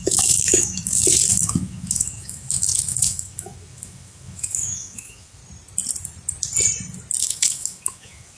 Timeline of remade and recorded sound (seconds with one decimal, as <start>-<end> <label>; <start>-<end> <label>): 0.0-5.4 remade; 5.4-7.2 recorded; 7.2-8.4 remade